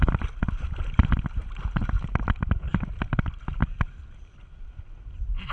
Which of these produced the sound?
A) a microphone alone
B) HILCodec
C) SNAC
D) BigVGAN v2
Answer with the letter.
A